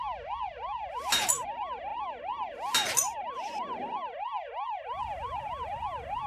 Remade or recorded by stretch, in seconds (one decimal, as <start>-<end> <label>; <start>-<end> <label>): 0.0-6.3 recorded